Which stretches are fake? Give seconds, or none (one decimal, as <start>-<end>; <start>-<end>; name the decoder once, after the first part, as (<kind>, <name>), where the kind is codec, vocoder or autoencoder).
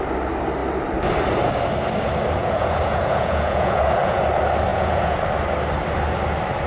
2.4-4.2 (vocoder, Vocos); 4.7-5.2